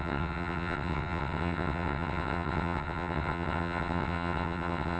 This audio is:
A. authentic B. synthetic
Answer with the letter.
B